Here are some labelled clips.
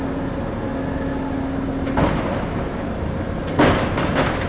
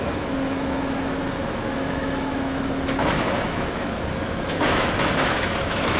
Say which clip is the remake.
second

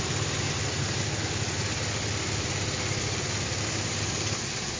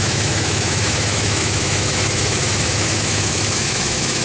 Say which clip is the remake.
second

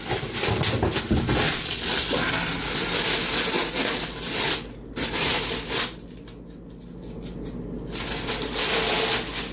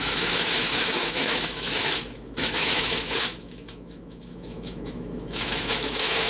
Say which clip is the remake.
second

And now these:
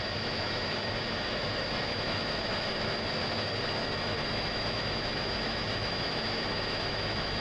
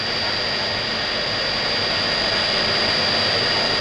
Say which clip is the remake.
first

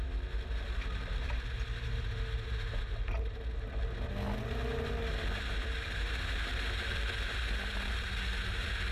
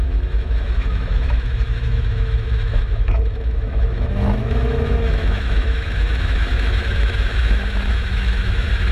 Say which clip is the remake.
second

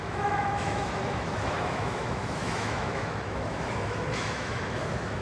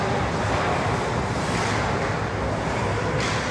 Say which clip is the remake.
first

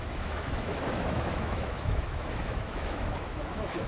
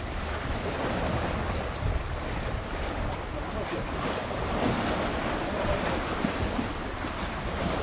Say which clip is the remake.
first